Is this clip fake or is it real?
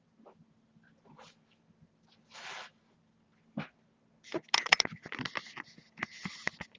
real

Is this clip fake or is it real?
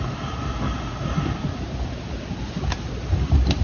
real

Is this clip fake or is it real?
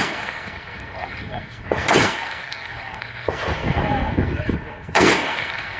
fake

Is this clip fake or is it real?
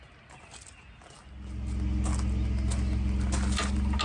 real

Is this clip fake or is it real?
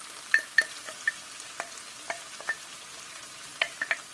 real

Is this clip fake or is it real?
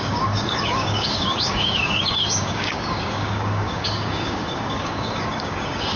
fake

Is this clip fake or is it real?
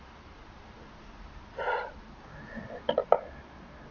real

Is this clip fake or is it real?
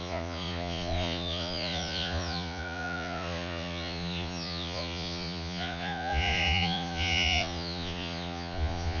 fake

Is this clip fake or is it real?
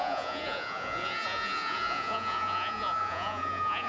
fake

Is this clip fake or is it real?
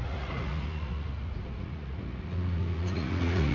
fake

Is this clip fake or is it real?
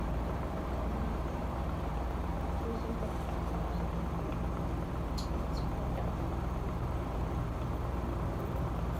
fake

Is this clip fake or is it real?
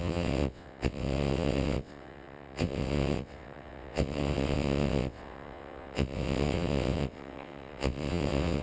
fake